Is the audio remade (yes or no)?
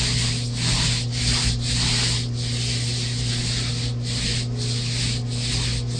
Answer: no